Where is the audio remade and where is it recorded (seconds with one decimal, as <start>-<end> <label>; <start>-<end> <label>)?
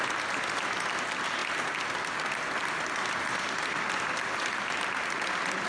0.0-5.7 recorded